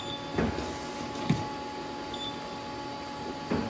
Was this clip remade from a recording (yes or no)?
no